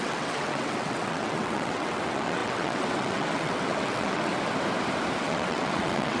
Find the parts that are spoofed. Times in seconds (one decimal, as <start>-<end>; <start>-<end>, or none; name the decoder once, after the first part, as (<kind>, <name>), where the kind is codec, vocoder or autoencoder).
0.0-4.3 (vocoder, WaveNeXt); 5.2-6.2